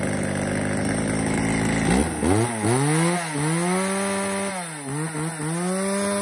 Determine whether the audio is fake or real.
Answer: real